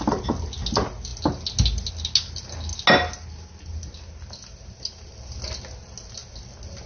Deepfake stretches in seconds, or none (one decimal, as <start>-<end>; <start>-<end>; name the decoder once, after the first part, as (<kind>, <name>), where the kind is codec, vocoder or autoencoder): none